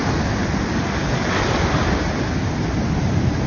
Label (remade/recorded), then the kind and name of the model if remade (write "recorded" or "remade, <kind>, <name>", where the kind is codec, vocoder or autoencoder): recorded